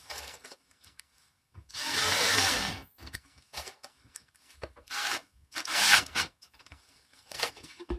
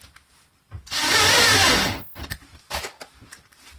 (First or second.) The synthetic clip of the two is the first